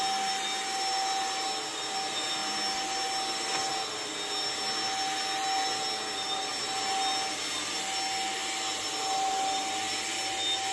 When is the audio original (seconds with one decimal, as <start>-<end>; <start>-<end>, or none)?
0.0-10.7